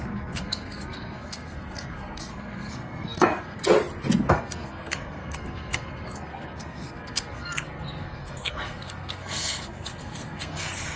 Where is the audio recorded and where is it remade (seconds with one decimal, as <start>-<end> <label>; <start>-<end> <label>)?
0.0-3.6 remade; 3.6-4.3 recorded; 4.3-11.0 remade